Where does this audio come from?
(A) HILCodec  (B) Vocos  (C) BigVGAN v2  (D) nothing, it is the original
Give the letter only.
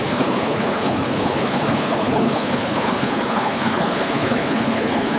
A